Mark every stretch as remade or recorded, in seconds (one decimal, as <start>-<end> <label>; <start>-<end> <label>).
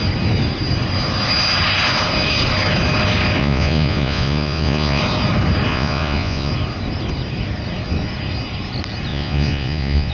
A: 0.0-3.4 recorded; 3.4-5.0 remade; 5.0-5.7 recorded; 5.7-6.5 remade; 6.5-9.1 recorded; 9.1-10.1 remade